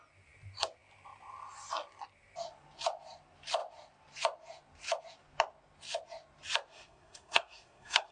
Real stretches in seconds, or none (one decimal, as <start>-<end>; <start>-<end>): 0.0-6.7